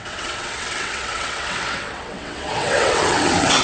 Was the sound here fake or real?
fake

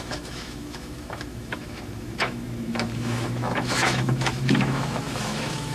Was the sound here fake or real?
fake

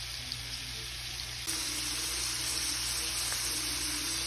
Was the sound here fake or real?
real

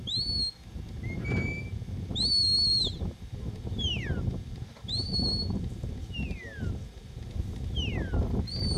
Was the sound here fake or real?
real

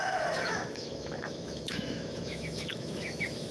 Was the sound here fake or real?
fake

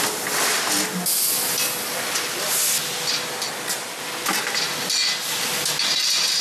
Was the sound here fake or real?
real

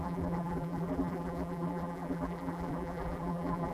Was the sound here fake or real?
fake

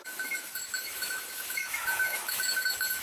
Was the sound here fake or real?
fake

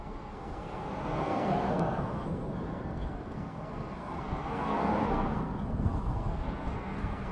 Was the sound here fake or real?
fake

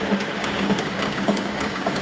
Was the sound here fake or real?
fake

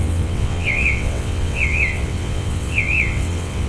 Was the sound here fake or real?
fake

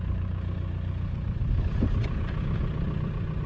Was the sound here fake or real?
real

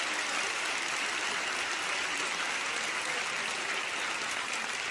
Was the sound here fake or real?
real